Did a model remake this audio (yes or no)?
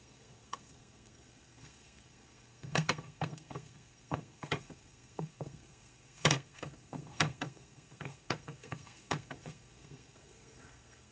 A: yes